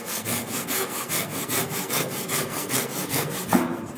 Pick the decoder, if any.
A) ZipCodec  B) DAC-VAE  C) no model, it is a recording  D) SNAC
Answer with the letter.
D